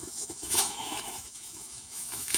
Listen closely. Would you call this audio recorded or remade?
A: remade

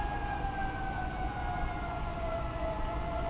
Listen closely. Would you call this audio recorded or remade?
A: remade